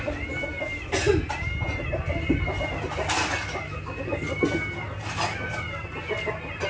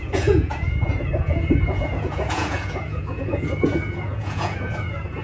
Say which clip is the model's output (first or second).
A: second